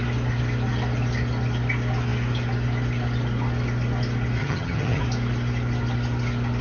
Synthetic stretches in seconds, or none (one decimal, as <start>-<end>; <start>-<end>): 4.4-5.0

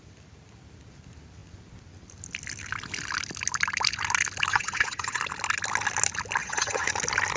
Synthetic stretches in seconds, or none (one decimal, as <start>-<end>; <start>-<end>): 4.5-5.2; 6.4-6.9

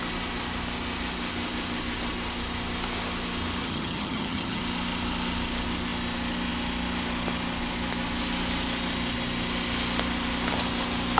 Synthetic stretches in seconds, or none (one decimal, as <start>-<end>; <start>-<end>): 3.6-4.6

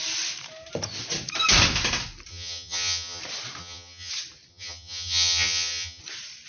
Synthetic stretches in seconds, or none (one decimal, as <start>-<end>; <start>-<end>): 2.3-3.2; 3.6-4.1; 4.5-6.0

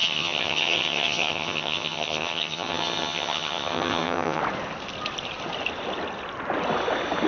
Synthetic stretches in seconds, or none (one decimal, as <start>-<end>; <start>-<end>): 0.0-4.4

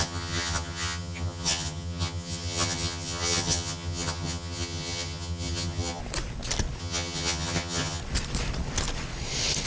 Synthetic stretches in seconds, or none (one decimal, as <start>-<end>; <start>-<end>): 0.0-6.0; 6.8-8.0